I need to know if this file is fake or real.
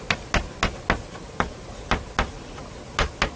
real